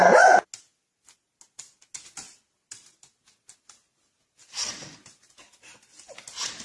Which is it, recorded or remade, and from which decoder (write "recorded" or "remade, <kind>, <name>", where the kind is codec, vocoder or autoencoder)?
recorded